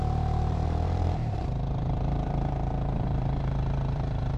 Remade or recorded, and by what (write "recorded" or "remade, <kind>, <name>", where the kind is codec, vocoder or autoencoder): remade, vocoder, BigVGAN v2